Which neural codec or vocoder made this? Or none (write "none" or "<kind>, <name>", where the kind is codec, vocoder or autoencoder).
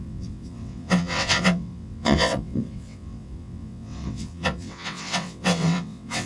vocoder, WaveNeXt